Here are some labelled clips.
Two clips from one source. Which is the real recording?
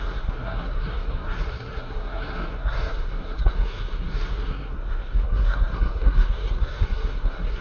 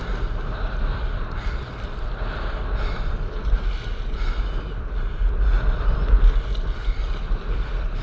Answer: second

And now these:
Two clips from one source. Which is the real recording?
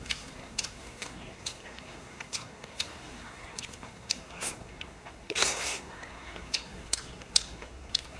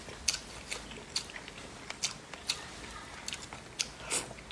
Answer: second